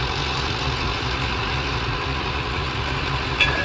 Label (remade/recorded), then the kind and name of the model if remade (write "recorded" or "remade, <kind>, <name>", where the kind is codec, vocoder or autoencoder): remade, vocoder, Vocos